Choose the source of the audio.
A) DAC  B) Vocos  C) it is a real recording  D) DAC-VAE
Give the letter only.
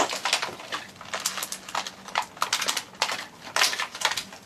C